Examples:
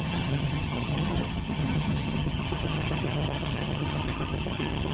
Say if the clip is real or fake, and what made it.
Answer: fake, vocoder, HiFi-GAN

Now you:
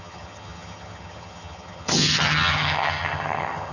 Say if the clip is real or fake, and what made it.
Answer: fake, vocoder, HiFi-GAN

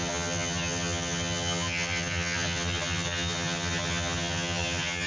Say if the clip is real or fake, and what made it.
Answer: fake, vocoder, HiFi-GAN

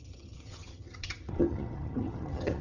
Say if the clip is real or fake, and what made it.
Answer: fake, vocoder, HiFi-GAN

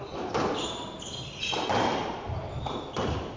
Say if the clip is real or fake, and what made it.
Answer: real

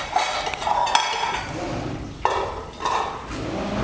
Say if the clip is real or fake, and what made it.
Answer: real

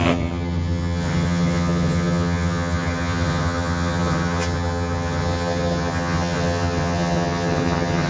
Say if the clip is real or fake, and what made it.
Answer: fake, vocoder, HiFi-GAN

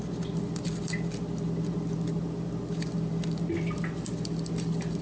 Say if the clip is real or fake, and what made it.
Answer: real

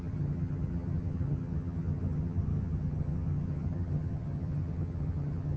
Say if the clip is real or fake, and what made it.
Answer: fake, vocoder, HiFi-GAN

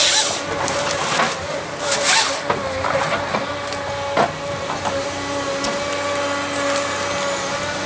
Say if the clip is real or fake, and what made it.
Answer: real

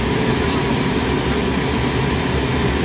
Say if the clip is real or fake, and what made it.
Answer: real